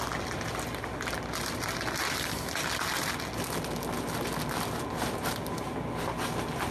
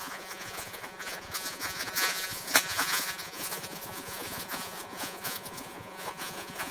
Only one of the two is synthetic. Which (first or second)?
second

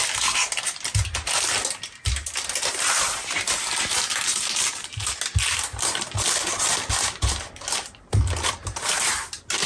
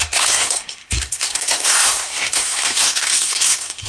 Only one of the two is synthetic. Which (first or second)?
second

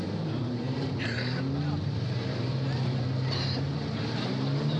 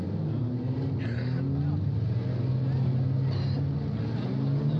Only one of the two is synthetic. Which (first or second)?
first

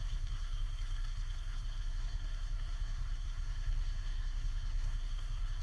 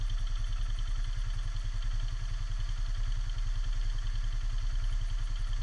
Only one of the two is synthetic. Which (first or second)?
first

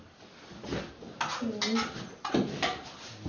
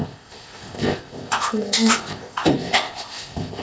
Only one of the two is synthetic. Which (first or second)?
second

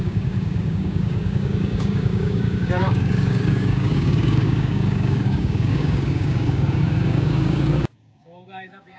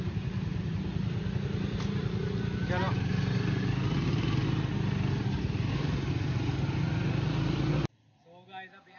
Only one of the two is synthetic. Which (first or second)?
first